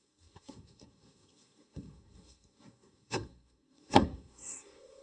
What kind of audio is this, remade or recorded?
remade